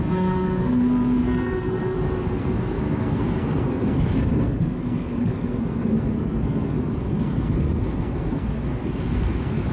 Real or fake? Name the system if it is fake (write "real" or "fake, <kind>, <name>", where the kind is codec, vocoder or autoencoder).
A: fake, codec, SNAC